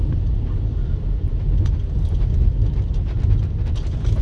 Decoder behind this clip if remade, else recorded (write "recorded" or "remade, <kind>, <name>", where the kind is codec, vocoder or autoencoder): recorded